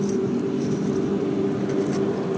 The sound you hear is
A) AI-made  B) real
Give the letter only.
B